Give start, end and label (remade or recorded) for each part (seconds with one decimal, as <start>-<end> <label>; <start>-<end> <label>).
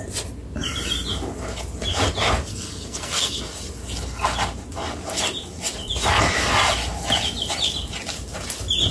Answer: 0.0-2.5 recorded; 2.5-3.4 remade; 3.4-8.9 recorded